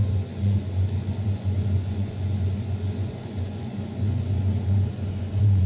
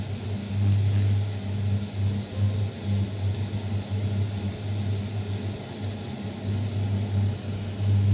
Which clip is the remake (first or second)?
first